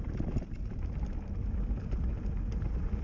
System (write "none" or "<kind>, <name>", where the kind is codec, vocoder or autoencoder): none